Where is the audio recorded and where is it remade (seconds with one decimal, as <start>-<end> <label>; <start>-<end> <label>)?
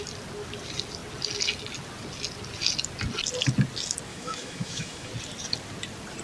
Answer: 0.0-4.1 recorded; 4.1-5.1 remade; 5.1-6.2 recorded